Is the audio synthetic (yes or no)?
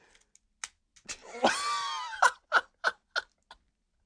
no